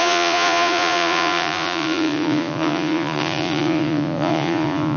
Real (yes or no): no